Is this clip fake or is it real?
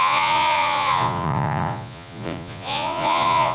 fake